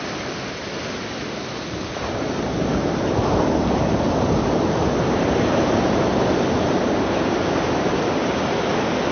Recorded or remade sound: recorded